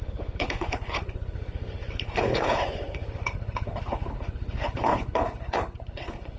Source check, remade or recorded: remade